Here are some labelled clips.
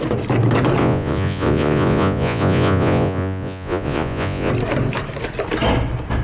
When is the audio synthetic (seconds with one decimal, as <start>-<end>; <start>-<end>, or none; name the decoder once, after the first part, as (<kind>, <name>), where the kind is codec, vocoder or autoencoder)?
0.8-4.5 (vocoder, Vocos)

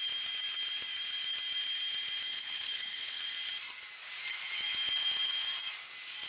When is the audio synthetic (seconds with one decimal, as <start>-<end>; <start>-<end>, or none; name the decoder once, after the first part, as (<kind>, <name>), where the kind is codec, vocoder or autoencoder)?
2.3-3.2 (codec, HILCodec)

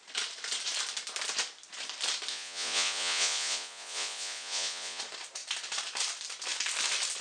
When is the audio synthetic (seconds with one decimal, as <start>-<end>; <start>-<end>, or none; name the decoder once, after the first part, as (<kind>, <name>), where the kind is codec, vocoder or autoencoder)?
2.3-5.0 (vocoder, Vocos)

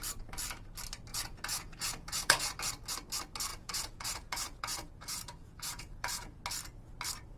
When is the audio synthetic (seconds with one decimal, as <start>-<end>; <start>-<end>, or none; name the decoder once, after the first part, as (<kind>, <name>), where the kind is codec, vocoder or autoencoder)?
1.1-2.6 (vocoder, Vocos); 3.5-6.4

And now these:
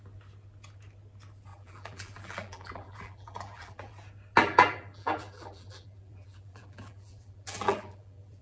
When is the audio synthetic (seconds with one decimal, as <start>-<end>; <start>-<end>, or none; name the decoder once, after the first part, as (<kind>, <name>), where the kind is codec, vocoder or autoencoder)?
1.5-3.9 (vocoder, BigVGAN v2); 4.4-8.4